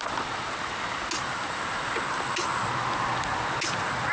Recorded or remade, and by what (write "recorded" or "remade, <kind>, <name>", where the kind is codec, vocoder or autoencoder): recorded